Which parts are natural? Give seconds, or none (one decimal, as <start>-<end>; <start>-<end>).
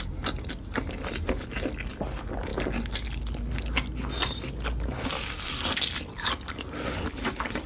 0.0-7.7